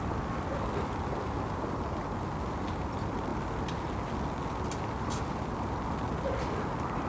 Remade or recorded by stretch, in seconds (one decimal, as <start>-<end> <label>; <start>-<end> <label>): 0.0-7.1 recorded